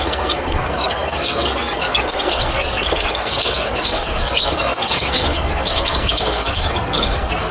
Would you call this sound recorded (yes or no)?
no